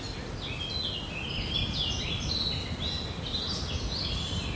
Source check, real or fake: real